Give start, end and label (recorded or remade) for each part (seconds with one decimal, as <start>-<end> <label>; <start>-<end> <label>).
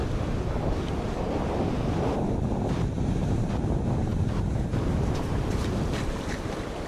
0.0-2.9 recorded; 2.9-6.9 remade